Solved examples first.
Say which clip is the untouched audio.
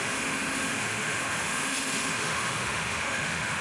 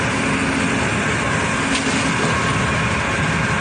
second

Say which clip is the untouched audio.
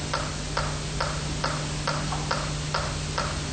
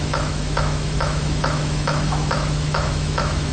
first